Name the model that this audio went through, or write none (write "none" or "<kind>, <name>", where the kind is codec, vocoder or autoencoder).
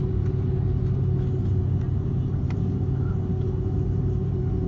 none